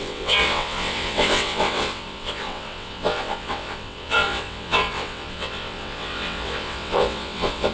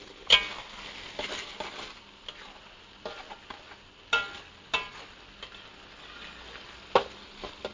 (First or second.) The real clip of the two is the second